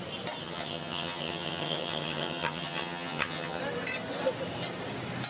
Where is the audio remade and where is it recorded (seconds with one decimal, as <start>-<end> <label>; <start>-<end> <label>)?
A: 0.0-0.4 recorded; 0.4-3.6 remade; 3.6-5.3 recorded